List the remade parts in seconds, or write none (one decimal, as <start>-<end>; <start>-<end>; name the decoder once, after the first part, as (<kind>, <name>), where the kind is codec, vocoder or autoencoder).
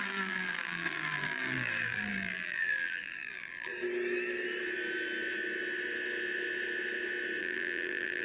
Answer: 0.0-3.7 (vocoder, BigVGAN v2); 7.4-8.2